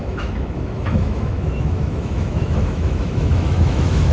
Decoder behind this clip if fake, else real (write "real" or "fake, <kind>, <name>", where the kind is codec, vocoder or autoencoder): fake, autoencoder, DAC-VAE